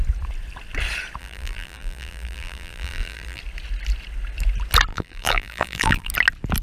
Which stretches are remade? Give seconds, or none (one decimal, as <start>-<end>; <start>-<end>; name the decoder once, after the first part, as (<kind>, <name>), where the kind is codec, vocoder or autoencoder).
1.2-3.4 (vocoder, BigVGAN v2); 4.9-6.1